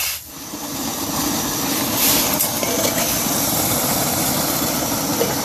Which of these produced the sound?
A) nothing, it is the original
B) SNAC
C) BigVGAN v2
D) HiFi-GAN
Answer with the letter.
C